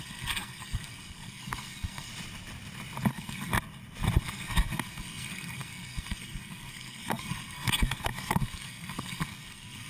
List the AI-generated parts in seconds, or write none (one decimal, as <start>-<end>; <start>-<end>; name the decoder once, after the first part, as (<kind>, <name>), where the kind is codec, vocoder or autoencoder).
0.0-2.1 (codec, SNAC); 3.1-3.5; 4.2-9.9